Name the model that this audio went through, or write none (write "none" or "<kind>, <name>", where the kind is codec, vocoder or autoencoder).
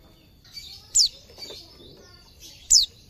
vocoder, BigVGAN v2